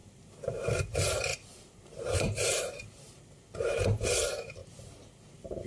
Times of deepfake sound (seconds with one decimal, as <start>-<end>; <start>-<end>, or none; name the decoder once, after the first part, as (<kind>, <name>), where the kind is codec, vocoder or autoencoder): 0.0-0.7 (vocoder, BigVGAN v2); 1.3-3.2